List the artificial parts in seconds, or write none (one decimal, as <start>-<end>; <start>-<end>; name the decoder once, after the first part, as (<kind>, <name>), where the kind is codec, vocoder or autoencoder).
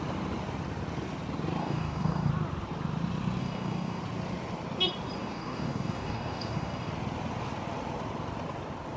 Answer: 1.6-2.3 (codec, DAC); 3.4-4.0; 5.2-6.9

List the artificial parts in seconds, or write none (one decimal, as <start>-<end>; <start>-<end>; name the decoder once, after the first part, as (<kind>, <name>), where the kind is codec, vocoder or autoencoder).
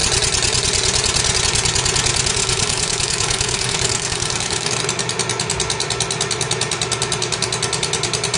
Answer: 2.4-4.8 (codec, DAC)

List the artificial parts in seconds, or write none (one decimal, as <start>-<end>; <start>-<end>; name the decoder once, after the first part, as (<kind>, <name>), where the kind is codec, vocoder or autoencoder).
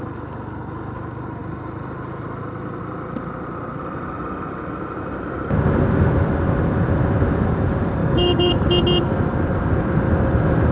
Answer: 8.0-8.5 (codec, DAC)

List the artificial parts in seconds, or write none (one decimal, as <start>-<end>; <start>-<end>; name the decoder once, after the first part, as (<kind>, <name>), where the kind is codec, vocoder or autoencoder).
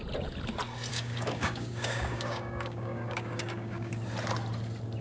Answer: 0.9-3.9 (codec, DAC)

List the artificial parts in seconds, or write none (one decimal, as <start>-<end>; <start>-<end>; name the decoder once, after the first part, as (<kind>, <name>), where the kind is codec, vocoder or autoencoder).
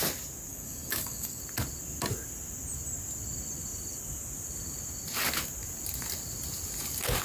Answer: 0.5-1.4 (codec, DAC)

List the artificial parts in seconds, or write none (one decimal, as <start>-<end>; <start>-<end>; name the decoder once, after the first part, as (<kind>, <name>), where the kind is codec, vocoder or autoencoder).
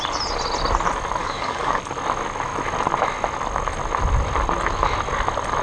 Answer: 1.2-1.8 (codec, DAC)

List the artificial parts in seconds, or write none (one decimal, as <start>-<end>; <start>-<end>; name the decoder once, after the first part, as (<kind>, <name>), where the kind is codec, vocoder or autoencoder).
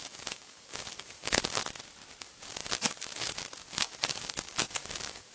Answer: 0.0-1.6 (codec, DAC); 2.2-5.3